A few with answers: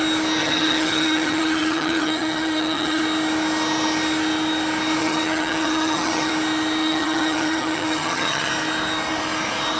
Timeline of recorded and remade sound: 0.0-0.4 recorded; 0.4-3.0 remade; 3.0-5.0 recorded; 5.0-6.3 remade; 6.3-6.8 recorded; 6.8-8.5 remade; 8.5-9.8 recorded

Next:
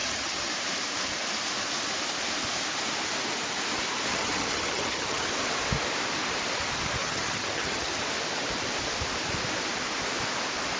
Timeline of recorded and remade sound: 0.0-0.5 remade; 0.5-4.1 recorded; 4.1-5.3 remade; 5.3-7.0 recorded; 7.0-8.0 remade; 8.0-10.8 recorded